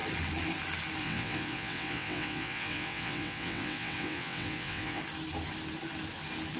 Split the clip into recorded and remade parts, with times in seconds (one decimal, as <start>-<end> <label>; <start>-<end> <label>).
0.0-1.0 recorded; 1.0-5.0 remade; 5.0-6.6 recorded